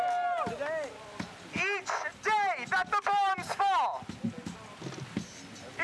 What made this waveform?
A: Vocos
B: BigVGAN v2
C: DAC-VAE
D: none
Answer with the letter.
D